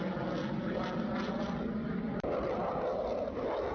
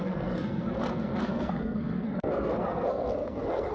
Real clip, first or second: first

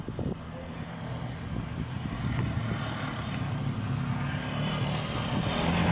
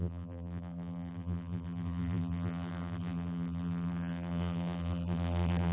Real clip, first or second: first